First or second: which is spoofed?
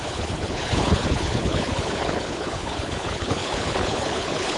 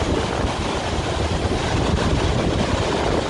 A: first